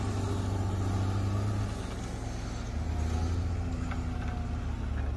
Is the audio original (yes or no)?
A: yes